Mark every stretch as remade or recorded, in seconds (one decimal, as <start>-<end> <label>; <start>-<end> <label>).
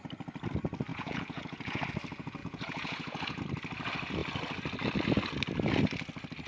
0.0-0.9 recorded; 0.9-1.8 remade; 1.8-2.4 recorded; 2.4-3.4 remade; 3.4-6.5 recorded